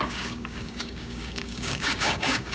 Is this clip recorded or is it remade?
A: remade